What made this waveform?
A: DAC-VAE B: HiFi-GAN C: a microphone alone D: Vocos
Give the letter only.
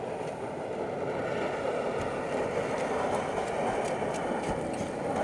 C